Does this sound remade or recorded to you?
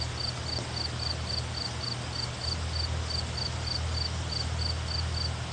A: recorded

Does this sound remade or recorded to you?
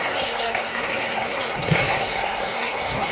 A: remade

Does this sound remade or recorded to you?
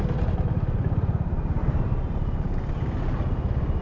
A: recorded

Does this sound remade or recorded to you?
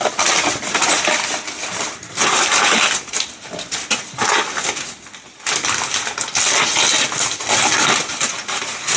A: recorded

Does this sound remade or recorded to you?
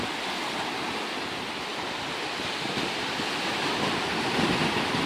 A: recorded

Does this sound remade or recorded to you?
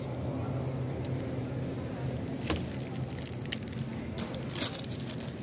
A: recorded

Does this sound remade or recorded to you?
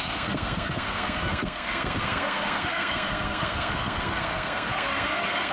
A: remade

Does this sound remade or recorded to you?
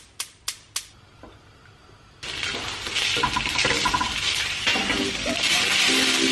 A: recorded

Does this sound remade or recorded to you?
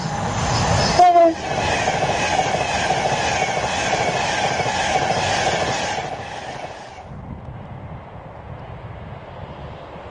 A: recorded